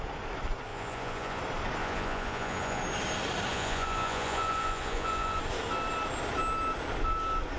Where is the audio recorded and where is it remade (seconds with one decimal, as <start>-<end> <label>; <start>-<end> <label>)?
0.0-0.7 recorded; 0.7-1.4 remade; 1.4-1.8 recorded; 1.8-2.8 remade; 2.8-3.5 recorded; 3.5-5.4 remade; 5.4-7.6 recorded